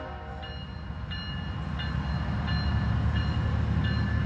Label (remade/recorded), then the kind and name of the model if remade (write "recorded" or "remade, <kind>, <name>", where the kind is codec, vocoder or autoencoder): recorded